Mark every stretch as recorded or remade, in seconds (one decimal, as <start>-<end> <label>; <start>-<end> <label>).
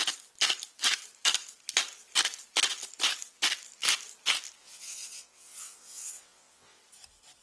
0.0-4.6 recorded; 4.6-6.8 remade; 6.8-7.4 recorded